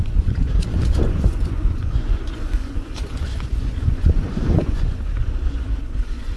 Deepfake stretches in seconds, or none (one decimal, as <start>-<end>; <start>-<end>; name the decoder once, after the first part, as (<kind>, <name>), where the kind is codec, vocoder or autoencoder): 0.0-6.4 (vocoder, Vocos)